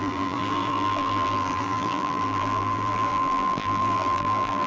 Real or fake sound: fake